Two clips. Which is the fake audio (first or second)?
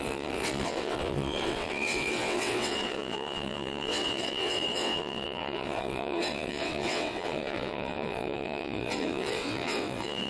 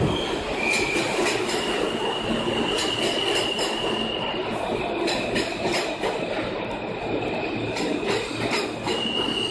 first